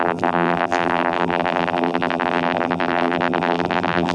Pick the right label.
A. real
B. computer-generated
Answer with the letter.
B